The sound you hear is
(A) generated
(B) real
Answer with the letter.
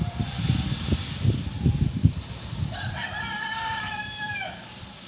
A